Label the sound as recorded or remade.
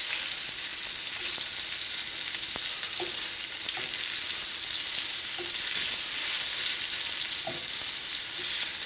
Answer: recorded